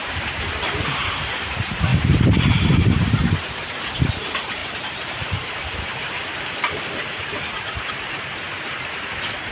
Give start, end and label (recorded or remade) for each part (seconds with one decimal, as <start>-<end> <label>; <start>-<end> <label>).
0.0-9.5 remade